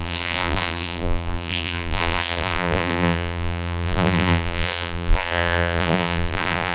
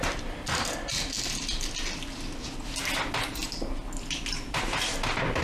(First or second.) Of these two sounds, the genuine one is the second